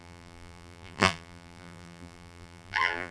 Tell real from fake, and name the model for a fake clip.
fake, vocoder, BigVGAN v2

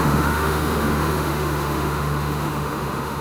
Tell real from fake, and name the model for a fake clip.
fake, autoencoder, DAC-VAE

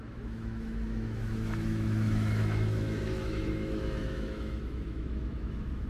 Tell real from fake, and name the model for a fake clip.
fake, autoencoder, DAC-VAE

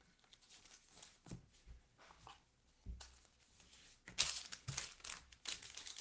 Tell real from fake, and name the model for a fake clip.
real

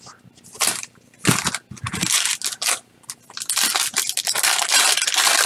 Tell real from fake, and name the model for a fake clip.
real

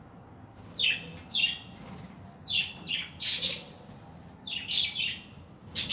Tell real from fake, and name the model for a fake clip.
real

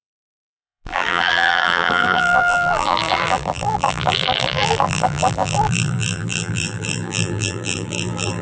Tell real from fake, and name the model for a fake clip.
fake, vocoder, BigVGAN v2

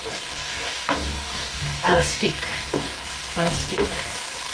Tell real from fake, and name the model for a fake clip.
fake, codec, DAC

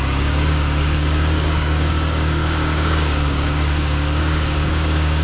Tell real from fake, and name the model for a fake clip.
fake, codec, DAC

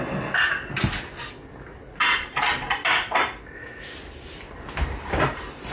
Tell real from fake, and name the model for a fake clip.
real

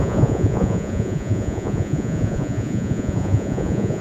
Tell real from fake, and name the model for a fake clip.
fake, vocoder, Vocos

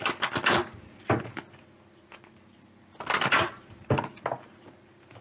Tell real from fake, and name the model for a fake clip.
real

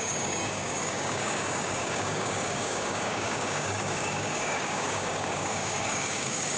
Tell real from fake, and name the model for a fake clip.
fake, codec, DAC